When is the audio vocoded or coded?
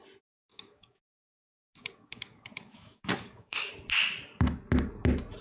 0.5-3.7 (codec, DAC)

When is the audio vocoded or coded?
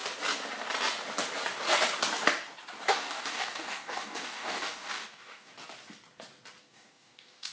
2.8-5.5 (codec, DAC); 6.6-7.5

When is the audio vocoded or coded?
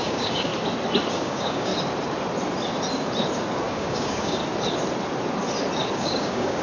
0.0-0.5 (codec, DAC); 1.1-1.7; 3.7-4.4; 5.9-6.6